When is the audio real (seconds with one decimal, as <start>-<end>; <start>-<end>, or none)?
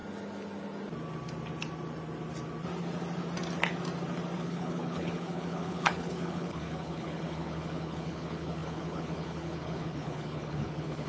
0.0-4.4